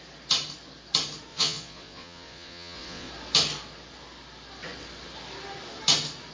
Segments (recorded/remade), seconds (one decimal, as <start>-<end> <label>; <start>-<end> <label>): 0.0-1.3 recorded; 1.3-3.1 remade; 3.1-6.3 recorded